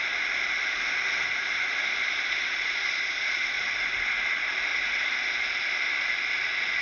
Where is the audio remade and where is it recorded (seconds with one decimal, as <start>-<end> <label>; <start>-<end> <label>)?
0.0-2.0 recorded; 2.0-3.7 remade; 3.7-6.8 recorded